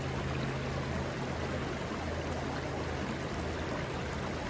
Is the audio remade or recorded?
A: recorded